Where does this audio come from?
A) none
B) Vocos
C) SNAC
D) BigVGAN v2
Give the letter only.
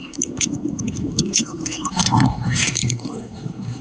C